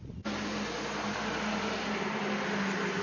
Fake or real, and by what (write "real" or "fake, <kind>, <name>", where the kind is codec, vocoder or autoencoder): real